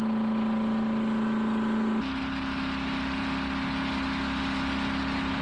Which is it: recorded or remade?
recorded